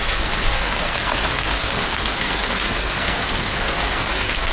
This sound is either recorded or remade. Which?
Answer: remade